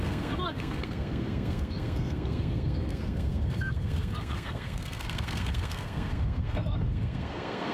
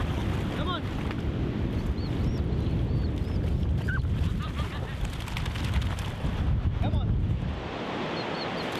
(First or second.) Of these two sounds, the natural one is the second